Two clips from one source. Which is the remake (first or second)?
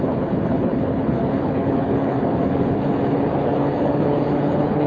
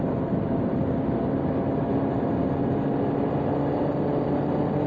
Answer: first